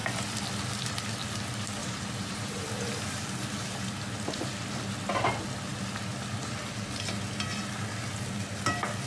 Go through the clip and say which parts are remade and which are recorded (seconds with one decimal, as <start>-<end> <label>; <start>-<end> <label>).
0.0-1.8 recorded; 1.8-2.6 remade; 2.6-9.1 recorded